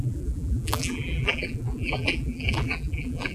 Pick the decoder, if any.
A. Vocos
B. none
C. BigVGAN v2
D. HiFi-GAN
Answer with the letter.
C